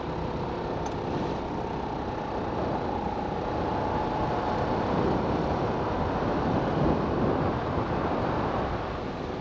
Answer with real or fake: real